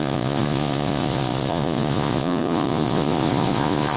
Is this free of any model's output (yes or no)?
no